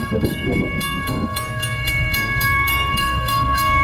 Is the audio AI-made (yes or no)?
yes